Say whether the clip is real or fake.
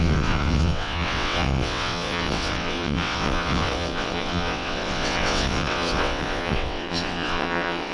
fake